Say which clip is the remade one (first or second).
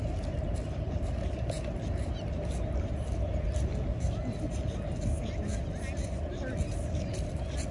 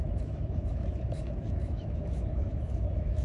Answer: second